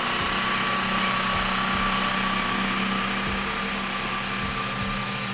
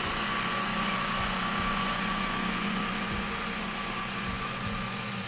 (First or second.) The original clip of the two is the first